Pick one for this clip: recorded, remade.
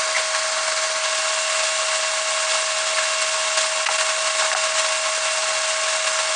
recorded